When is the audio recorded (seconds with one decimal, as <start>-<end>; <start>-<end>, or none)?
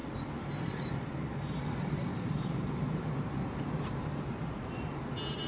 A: 0.0-2.1; 4.0-5.5